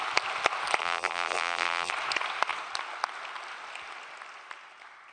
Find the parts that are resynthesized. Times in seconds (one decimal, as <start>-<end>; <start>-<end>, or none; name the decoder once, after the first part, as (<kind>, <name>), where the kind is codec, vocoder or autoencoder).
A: 0.8-1.9 (vocoder, BigVGAN v2)